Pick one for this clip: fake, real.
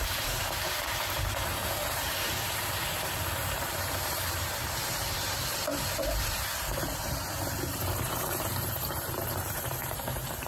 fake